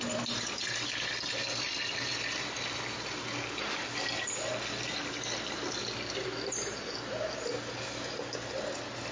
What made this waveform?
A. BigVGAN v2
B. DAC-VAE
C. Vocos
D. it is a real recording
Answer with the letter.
D